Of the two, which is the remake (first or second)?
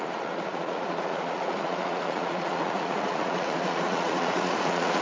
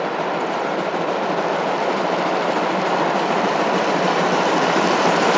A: first